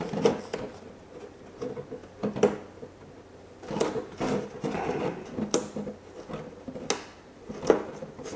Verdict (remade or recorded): recorded